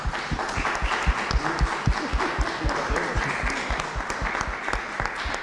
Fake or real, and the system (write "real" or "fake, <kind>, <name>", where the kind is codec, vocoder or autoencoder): real